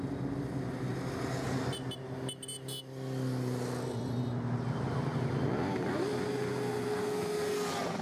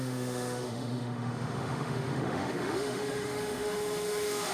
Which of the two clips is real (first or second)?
first